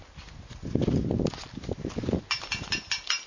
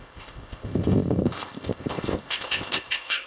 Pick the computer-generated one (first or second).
second